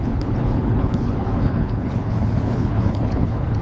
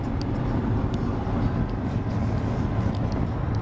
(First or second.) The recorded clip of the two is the second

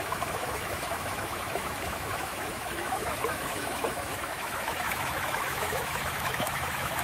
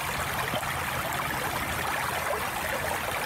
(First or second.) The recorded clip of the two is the second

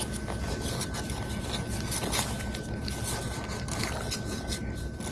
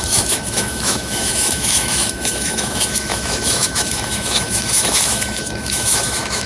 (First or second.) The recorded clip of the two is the first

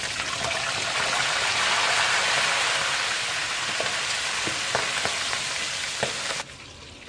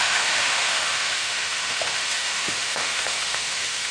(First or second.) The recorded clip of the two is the first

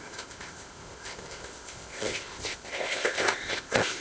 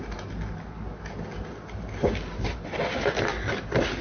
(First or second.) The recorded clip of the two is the second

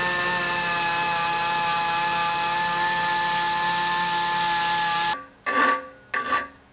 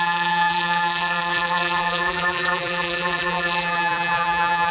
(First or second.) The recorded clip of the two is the first